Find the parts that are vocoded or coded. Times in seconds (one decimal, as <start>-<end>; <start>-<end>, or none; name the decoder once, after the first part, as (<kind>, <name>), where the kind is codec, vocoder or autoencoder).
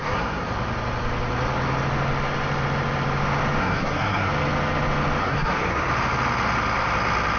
0.0-0.5 (codec, SNAC); 3.6-4.3; 5.2-5.9